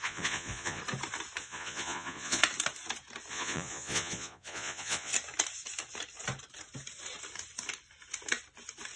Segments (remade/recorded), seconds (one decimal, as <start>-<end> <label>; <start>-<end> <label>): 0.0-0.8 remade; 0.8-1.4 recorded; 1.4-2.4 remade; 2.4-3.3 recorded; 3.3-5.1 remade; 5.1-9.0 recorded